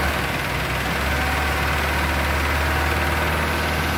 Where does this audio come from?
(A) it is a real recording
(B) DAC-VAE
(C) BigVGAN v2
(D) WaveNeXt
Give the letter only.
A